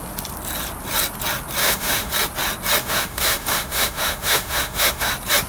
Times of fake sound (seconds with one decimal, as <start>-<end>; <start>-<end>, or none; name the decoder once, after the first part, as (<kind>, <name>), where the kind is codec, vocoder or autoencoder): 1.6-2.1 (autoencoder, DAC-VAE); 2.8-5.1